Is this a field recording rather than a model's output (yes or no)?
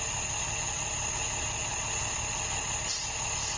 yes